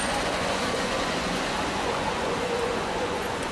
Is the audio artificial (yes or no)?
yes